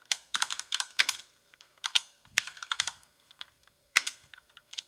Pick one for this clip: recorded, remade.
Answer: remade